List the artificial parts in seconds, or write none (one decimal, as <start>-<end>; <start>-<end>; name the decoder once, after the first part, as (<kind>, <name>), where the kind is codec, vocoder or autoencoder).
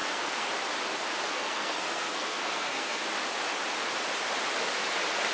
0.0-0.5 (codec, SNAC); 1.2-3.0